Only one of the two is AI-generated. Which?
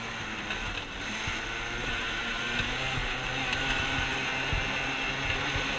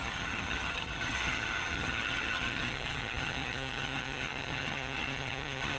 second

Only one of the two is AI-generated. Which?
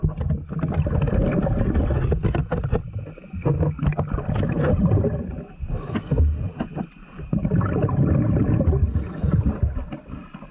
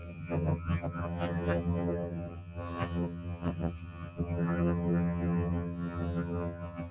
second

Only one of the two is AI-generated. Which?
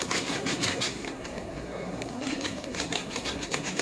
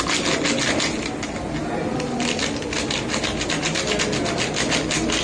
first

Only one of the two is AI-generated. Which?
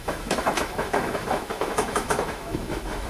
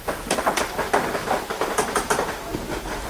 first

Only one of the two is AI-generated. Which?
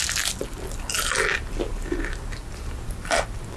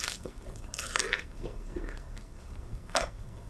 second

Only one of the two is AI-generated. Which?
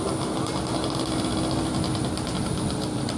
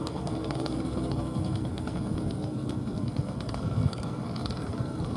second